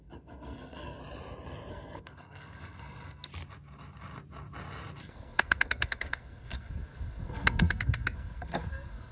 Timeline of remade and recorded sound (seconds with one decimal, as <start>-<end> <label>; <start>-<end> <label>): 0.0-1.0 remade; 1.0-1.7 recorded; 1.7-3.3 remade; 3.3-5.0 recorded; 5.0-9.1 remade